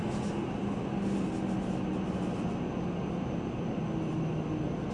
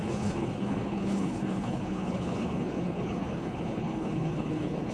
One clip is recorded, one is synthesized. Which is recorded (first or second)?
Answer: first